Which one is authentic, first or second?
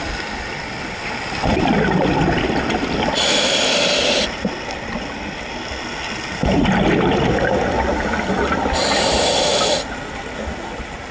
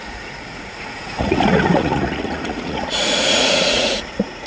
first